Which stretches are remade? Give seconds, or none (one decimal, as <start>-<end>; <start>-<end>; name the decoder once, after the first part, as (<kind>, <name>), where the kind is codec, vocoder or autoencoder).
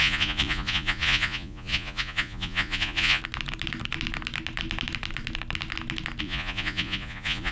0.0-3.2 (vocoder, Vocos); 6.2-7.5